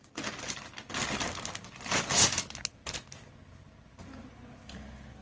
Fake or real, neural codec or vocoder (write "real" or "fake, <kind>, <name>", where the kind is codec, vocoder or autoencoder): real